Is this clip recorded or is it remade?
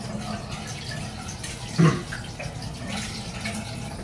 recorded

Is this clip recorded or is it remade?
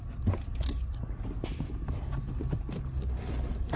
recorded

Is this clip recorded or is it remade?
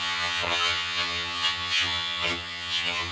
remade